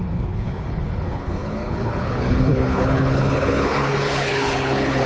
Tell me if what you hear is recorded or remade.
remade